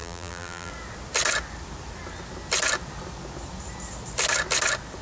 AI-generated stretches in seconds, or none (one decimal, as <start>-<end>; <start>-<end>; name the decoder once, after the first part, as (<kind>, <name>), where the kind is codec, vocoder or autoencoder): 0.0-0.7 (vocoder, BigVGAN v2)